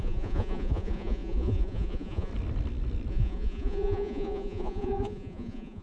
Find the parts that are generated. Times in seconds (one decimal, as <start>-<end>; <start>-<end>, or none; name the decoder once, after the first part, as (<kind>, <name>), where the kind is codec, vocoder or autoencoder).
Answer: 0.0-2.3 (vocoder, Vocos); 3.1-5.8